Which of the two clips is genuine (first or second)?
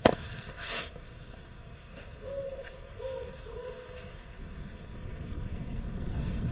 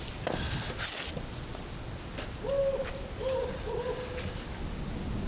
second